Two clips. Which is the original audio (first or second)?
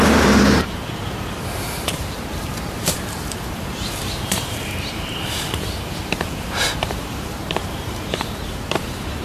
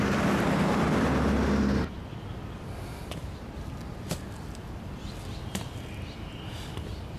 second